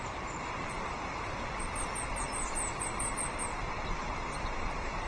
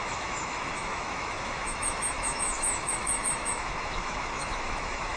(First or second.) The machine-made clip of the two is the second